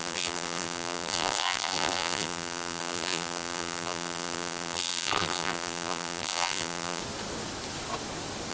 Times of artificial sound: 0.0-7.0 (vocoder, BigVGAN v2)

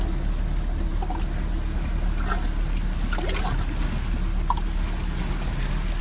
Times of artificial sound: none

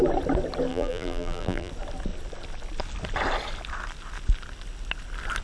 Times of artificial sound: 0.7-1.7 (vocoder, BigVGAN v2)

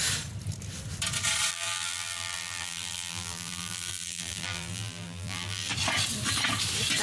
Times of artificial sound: 1.5-5.7 (vocoder, BigVGAN v2)